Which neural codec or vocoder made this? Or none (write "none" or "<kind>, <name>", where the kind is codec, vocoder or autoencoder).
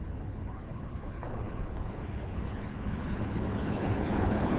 codec, HILCodec